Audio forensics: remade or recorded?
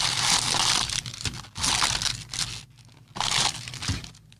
recorded